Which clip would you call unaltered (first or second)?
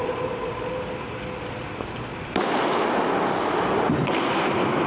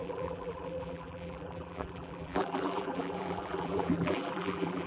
first